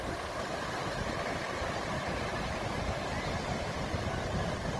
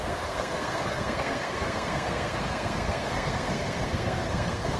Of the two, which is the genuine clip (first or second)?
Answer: first